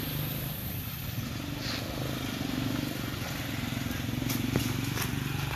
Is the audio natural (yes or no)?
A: yes